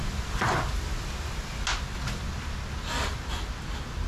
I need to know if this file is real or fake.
real